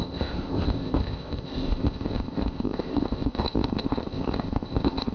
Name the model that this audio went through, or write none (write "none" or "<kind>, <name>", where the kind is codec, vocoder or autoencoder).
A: codec, ZipCodec